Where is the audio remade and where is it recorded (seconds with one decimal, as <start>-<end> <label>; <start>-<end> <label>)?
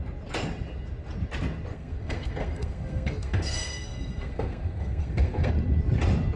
0.0-1.7 recorded; 1.7-5.5 remade; 5.5-6.4 recorded